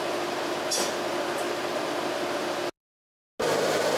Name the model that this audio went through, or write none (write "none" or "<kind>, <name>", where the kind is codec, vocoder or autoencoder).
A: none